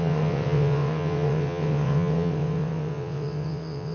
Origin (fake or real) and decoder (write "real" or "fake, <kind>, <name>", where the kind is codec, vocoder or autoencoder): fake, vocoder, WaveNeXt